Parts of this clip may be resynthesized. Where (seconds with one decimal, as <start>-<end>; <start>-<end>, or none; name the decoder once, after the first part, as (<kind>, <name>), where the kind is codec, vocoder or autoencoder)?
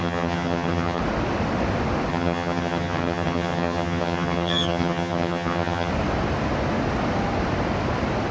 0.0-1.0 (vocoder, HiFi-GAN); 2.1-5.9